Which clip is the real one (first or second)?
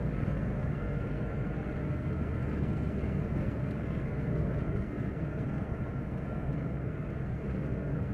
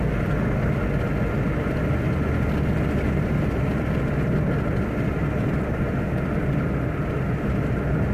second